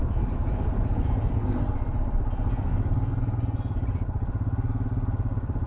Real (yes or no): yes